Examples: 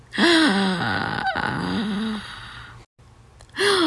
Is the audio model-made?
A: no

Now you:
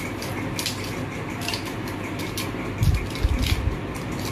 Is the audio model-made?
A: no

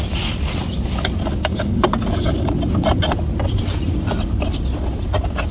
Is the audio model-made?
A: yes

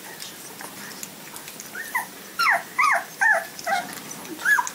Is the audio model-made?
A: no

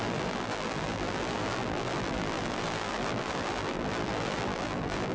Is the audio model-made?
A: yes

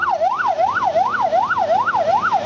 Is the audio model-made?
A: no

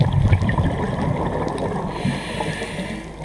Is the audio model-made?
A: no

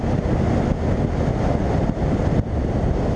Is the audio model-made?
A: no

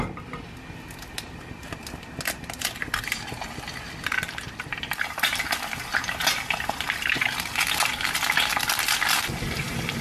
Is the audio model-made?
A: no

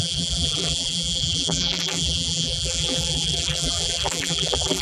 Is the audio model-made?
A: yes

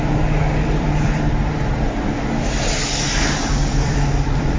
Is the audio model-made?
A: yes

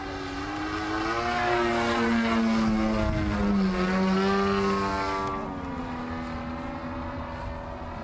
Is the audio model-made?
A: no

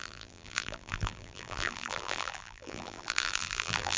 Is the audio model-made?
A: yes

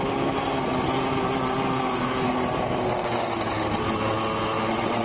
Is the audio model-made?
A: no